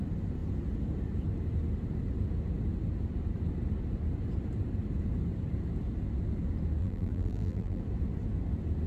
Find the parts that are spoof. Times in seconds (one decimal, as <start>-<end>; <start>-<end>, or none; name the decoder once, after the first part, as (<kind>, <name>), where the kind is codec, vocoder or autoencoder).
6.8-7.8 (vocoder, BigVGAN v2)